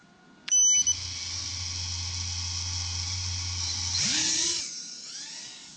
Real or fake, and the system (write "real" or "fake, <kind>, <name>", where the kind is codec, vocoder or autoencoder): real